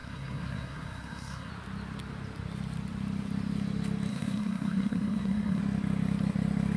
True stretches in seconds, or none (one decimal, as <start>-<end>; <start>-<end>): 1.5-4.1; 5.6-6.8